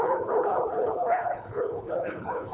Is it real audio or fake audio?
fake